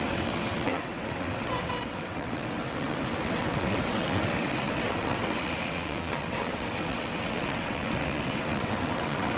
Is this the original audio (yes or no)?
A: no